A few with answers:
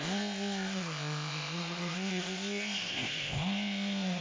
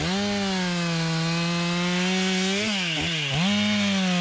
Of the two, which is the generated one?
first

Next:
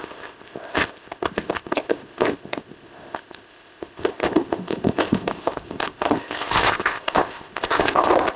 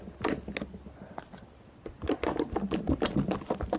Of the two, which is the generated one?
first